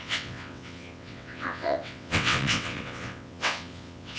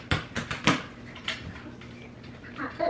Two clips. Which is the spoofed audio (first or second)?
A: first